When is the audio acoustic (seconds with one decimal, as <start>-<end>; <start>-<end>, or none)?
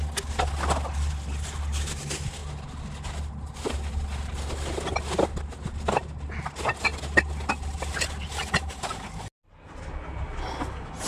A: 0.0-11.1